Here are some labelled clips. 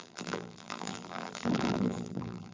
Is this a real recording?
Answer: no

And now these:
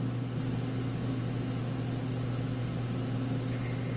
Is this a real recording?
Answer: yes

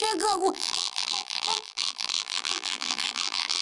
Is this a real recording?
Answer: no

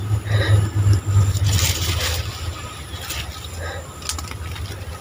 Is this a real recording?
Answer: yes